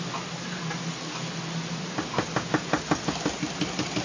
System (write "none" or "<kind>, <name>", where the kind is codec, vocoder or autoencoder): none